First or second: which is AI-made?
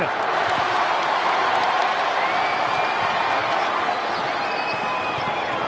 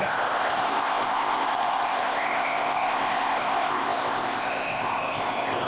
second